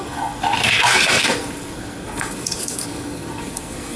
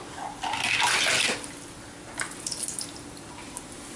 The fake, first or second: first